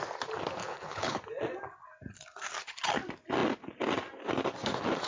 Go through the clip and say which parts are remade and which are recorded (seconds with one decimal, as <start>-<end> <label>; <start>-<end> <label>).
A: 0.0-0.6 recorded; 0.6-1.2 remade; 1.2-5.1 recorded

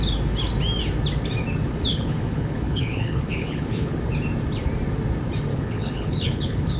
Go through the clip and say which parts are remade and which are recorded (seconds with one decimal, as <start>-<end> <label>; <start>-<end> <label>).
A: 0.0-1.9 recorded; 1.9-3.9 remade; 3.9-5.5 recorded; 5.5-6.8 remade

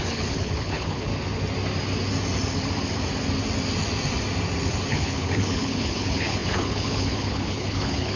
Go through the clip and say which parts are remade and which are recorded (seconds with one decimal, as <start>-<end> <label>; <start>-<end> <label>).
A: 0.0-1.1 remade; 1.1-4.9 recorded; 4.9-8.2 remade

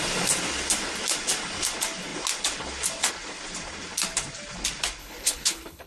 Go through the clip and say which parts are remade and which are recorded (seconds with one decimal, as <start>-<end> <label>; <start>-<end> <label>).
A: 0.0-5.0 recorded; 5.0-5.9 remade